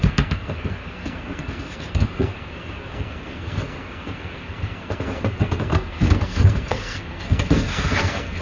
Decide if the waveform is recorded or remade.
remade